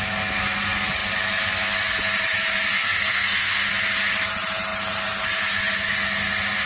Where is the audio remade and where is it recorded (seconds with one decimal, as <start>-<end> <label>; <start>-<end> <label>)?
0.0-2.7 recorded; 2.7-3.7 remade; 3.7-6.7 recorded